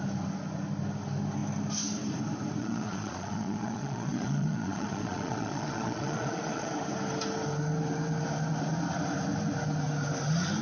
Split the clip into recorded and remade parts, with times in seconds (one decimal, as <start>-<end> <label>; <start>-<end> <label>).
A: 0.0-2.6 recorded; 2.6-6.7 remade; 6.7-10.6 recorded